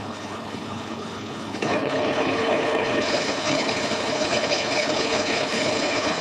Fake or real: fake